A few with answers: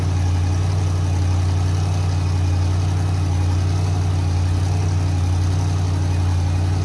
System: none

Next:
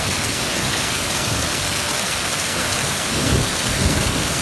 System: codec, SNAC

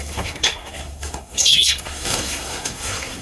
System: codec, SNAC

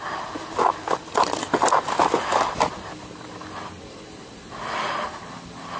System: none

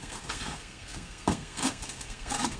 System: codec, SNAC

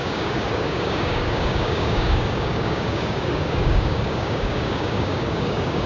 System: codec, DAC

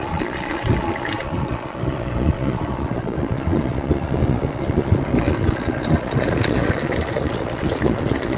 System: vocoder, Vocos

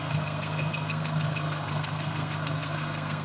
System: codec, SNAC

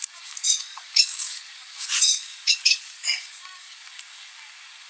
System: codec, DAC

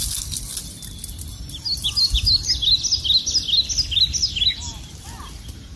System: none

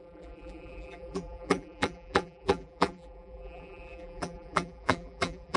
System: vocoder, BigVGAN v2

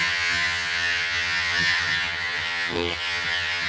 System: vocoder, HiFi-GAN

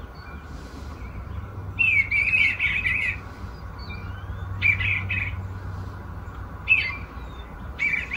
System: none